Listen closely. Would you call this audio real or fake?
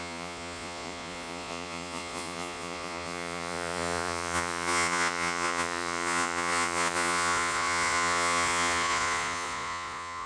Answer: fake